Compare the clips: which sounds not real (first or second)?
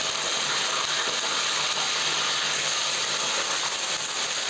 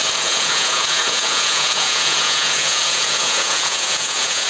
second